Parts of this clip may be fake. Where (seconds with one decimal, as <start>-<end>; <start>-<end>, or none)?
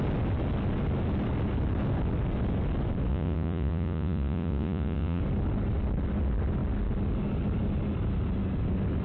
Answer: 3.1-5.2